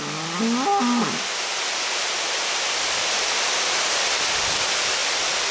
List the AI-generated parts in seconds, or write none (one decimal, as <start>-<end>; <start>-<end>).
none